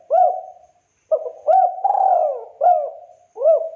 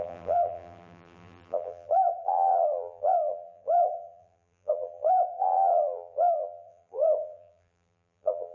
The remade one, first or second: second